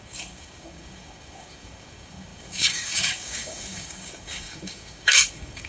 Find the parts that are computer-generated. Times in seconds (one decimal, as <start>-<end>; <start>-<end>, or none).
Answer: 0.0-5.7